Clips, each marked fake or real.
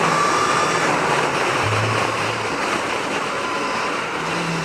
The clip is fake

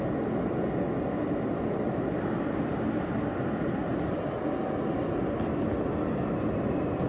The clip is real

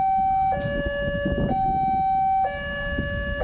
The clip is real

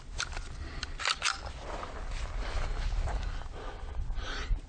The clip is real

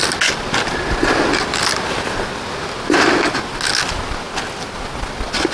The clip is real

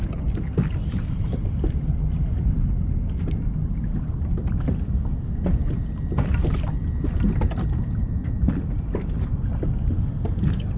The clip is real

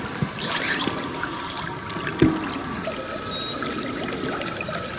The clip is real